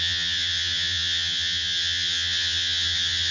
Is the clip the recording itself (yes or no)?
no